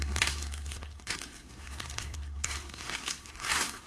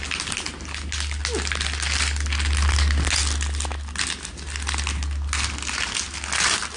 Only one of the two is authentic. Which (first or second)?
second